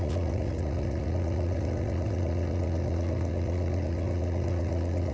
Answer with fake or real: fake